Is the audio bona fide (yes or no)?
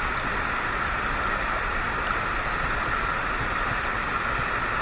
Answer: yes